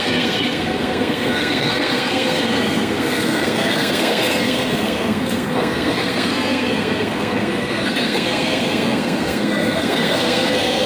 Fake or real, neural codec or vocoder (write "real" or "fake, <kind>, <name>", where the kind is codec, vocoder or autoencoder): fake, codec, SNAC